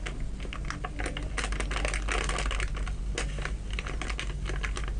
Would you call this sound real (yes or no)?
yes